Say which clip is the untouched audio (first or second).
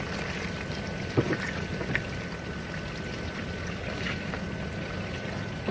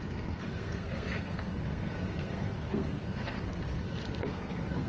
first